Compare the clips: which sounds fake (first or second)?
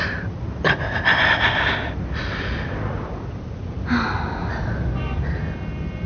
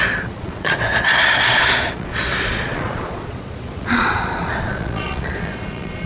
second